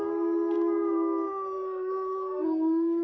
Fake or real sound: fake